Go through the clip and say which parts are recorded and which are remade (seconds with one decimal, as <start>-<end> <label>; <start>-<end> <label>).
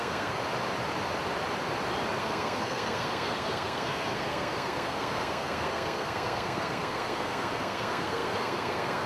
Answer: 0.0-0.4 remade; 0.4-2.2 recorded; 2.2-9.1 remade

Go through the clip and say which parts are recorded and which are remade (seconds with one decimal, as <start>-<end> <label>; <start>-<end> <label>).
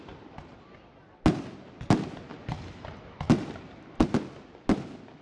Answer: 0.0-5.2 recorded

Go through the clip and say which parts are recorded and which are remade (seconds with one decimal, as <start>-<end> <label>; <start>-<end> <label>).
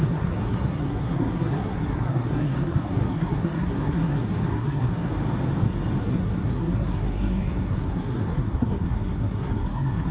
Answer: 0.0-5.1 remade; 5.1-6.0 recorded; 6.0-10.1 remade